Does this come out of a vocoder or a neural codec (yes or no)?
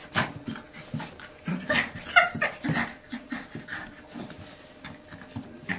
no